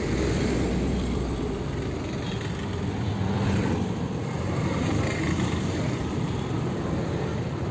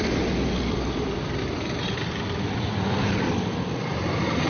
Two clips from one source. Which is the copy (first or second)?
second